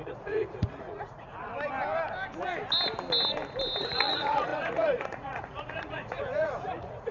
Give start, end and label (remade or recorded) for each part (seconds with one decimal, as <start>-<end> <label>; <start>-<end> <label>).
0.0-1.5 remade; 1.5-3.8 recorded; 3.8-7.1 remade